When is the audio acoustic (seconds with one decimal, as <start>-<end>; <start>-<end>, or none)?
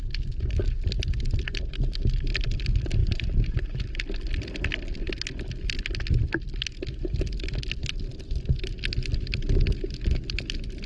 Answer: 0.0-3.0; 3.8-10.9